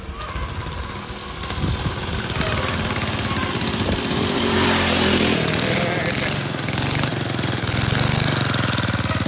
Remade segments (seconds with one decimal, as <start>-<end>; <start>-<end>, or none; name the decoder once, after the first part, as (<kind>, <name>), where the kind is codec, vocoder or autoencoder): 3.4-5.5 (vocoder, BigVGAN v2); 7.1-7.6